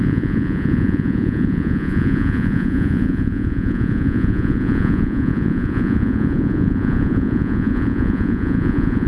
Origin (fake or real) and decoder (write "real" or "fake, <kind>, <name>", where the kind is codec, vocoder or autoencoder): fake, vocoder, Vocos